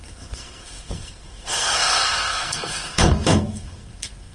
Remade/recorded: remade